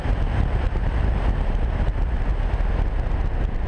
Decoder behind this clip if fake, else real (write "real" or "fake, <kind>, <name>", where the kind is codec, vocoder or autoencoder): real